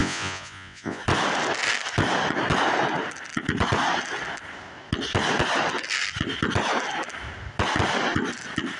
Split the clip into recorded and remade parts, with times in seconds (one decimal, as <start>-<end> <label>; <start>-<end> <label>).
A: 0.0-1.0 remade; 1.0-8.8 recorded